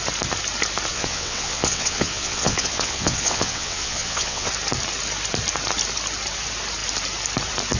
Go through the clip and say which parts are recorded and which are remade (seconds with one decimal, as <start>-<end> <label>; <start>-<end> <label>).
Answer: 0.0-0.9 recorded; 0.9-4.5 remade; 4.5-7.8 recorded